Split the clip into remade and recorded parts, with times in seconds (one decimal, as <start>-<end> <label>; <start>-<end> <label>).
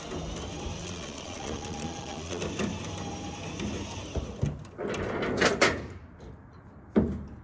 0.0-0.8 recorded; 0.8-2.4 remade; 2.4-7.4 recorded